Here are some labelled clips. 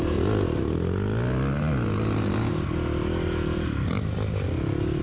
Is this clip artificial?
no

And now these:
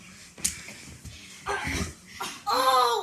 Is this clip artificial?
no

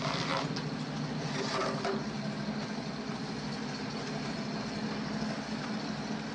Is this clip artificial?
no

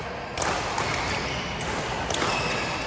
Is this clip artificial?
no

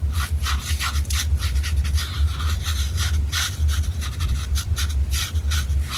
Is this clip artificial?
yes